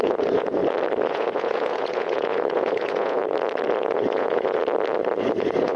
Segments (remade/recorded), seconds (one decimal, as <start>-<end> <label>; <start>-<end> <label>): 0.0-0.6 remade; 0.6-1.1 recorded; 1.1-3.2 remade; 3.2-3.8 recorded; 3.8-4.6 remade; 4.6-5.2 recorded; 5.2-5.8 remade